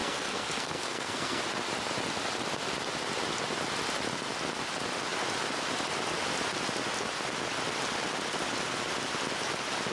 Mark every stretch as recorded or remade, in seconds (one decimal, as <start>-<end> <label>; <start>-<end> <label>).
0.0-1.4 remade; 1.4-9.9 recorded